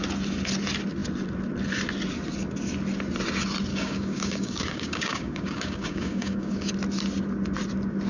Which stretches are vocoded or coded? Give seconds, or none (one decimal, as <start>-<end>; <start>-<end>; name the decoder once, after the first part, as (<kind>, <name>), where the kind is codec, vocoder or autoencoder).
3.7-6.7 (codec, DAC)